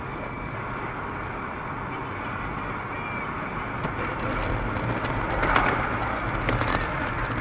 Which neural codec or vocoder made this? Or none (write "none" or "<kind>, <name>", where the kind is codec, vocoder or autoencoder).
none